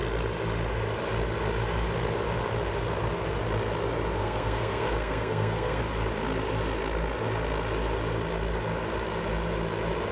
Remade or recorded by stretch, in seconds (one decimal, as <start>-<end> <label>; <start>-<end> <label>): 0.0-4.2 recorded; 4.2-5.8 remade; 5.8-10.1 recorded